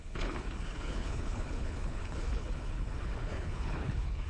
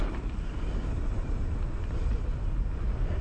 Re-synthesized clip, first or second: first